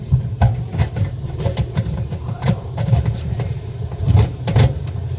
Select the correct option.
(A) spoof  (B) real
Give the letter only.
A